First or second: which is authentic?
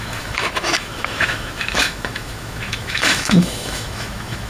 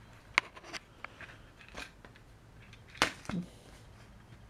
second